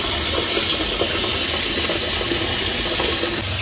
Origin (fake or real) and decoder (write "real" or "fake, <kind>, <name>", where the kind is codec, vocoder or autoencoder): real